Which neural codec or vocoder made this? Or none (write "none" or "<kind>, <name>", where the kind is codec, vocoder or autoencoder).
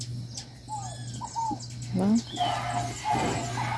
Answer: none